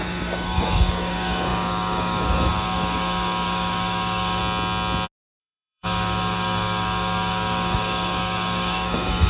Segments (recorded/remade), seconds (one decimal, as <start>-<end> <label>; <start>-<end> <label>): 0.0-4.4 remade; 4.4-5.4 recorded; 5.4-9.3 remade